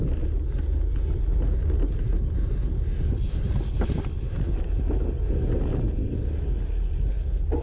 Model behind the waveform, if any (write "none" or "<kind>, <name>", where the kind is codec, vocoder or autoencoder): none